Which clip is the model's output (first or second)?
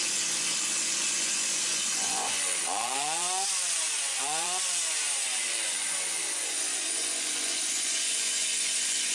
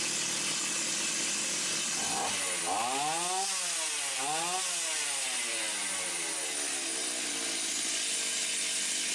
first